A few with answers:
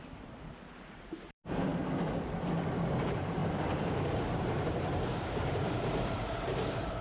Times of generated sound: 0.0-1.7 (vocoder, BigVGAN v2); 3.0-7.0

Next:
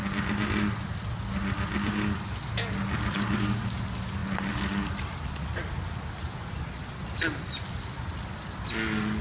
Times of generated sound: none

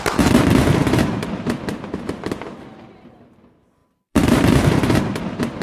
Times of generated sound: 0.8-2.2 (vocoder, BigVGAN v2); 3.8-5.0

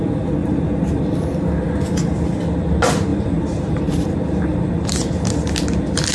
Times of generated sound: 0.4-1.0 (vocoder, BigVGAN v2); 3.1-5.6

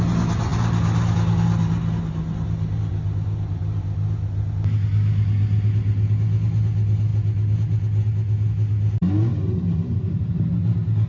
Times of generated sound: 9.2-10.0 (vocoder, BigVGAN v2)

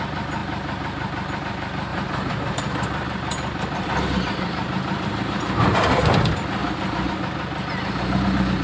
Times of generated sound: 1.9-6.0 (vocoder, BigVGAN v2)